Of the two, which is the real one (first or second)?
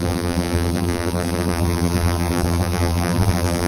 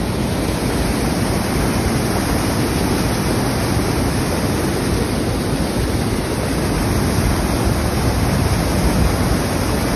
second